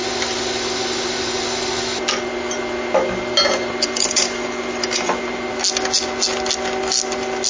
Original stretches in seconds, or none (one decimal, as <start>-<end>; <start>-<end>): 0.0-7.5

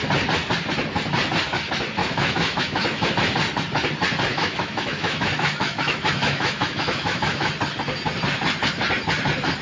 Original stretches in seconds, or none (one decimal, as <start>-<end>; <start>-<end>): 0.0-2.0; 3.1-4.3; 7.5-9.6

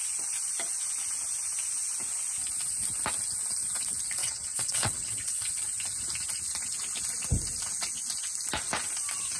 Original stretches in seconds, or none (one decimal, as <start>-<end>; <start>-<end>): 0.0-4.2; 5.5-9.4